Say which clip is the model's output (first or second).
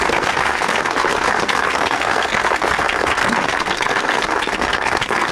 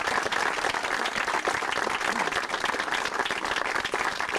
first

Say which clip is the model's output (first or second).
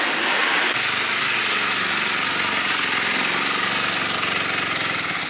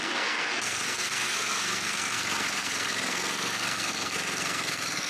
second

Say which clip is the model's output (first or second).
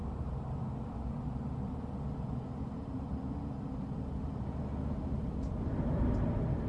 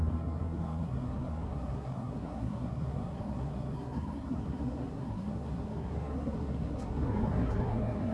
second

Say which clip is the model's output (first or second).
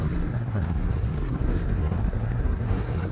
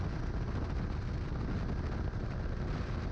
first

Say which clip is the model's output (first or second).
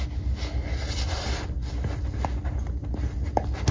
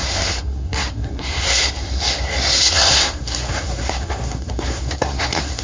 second